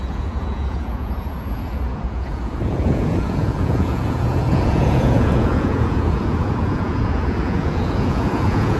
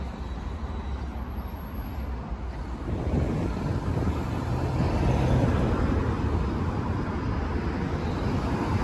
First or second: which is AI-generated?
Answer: first